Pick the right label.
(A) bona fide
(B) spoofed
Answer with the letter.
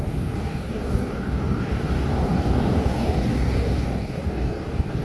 B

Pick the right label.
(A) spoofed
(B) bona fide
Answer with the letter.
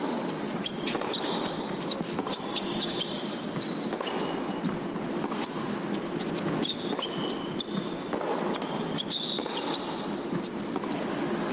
B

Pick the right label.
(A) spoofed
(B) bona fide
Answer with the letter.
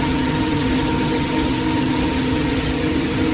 A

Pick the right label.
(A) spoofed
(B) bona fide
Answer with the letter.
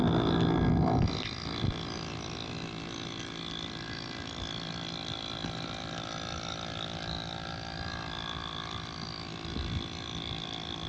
B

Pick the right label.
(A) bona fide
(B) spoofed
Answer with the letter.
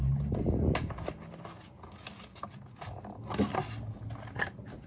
A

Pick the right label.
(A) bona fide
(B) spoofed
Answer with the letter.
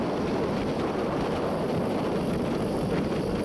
A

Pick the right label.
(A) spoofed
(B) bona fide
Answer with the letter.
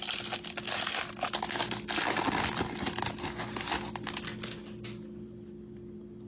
B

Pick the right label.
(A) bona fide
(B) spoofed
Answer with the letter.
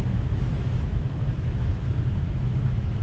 B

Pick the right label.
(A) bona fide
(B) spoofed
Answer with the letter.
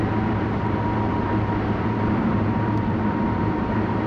B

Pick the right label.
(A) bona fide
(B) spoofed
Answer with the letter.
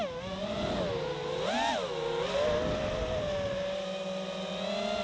A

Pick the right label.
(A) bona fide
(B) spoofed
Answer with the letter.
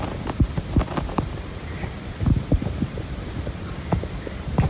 B